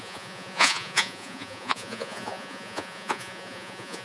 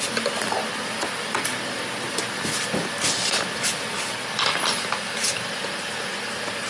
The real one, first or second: second